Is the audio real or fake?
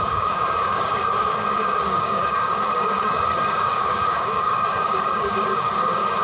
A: fake